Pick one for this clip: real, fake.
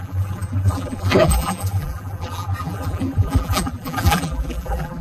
fake